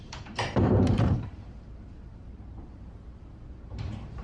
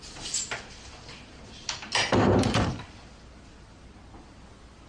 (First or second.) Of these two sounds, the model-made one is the first